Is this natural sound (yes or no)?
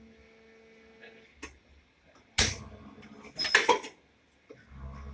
yes